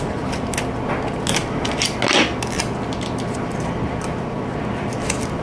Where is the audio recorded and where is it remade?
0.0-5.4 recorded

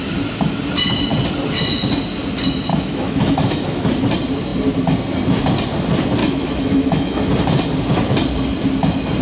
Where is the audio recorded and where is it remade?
0.0-2.7 recorded; 2.7-3.9 remade; 3.9-6.2 recorded; 6.2-7.2 remade; 7.2-9.2 recorded

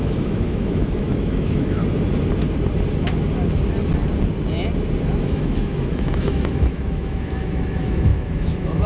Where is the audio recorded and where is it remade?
0.0-1.8 remade; 1.8-5.2 recorded; 5.2-8.9 remade

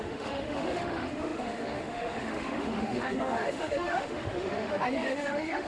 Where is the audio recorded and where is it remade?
0.0-5.7 remade

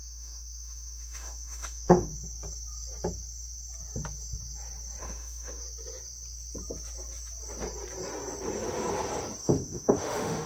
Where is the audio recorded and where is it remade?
0.0-2.1 remade; 2.1-5.0 recorded; 5.0-5.6 remade; 5.6-9.4 recorded; 9.4-10.5 remade

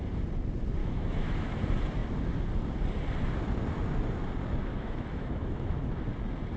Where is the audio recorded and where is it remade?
0.0-0.8 recorded; 0.8-1.6 remade; 1.6-4.7 recorded; 4.7-5.9 remade; 5.9-6.6 recorded